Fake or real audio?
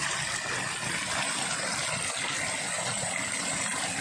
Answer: real